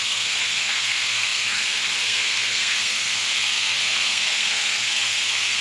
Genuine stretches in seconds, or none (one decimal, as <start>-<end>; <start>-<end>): none